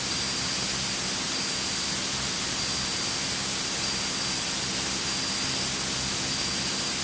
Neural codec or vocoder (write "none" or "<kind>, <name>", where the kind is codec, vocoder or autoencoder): none